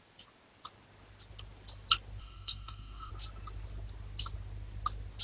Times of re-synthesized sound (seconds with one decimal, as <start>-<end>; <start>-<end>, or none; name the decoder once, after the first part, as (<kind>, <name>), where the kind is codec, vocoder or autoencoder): 2.2-3.1 (codec, SNAC)